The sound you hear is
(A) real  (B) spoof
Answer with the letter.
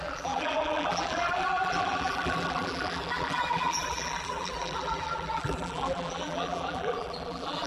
B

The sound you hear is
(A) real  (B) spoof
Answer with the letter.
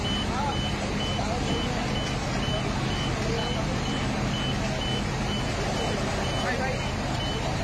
A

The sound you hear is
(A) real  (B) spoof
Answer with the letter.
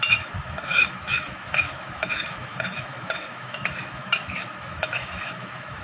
B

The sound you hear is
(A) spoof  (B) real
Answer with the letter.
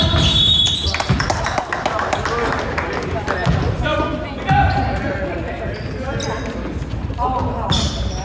B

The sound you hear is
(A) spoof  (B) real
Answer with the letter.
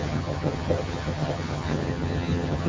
A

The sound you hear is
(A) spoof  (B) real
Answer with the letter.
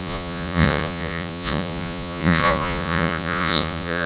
A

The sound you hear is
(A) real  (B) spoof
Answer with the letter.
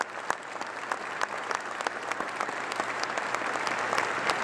A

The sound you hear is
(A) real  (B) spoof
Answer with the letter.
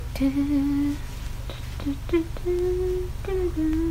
A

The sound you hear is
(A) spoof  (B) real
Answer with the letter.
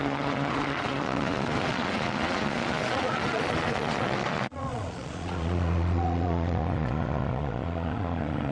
A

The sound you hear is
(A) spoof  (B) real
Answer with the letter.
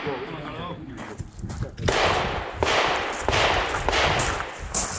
B